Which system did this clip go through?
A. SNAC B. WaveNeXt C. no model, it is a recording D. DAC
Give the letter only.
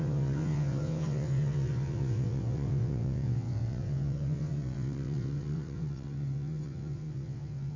B